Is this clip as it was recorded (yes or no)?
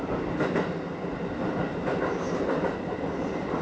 yes